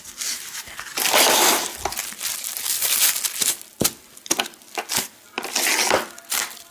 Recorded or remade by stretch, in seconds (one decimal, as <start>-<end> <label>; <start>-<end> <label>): 0.0-2.0 recorded; 2.0-3.8 remade; 3.8-6.7 recorded